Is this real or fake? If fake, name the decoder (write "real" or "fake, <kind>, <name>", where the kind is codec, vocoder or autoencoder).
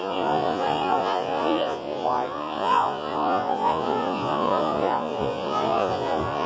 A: fake, vocoder, Vocos